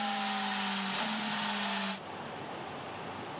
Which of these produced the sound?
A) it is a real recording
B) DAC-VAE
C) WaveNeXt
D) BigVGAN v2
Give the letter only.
A